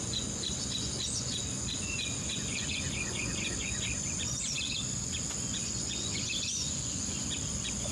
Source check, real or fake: fake